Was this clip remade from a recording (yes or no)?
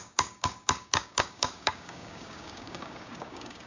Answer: yes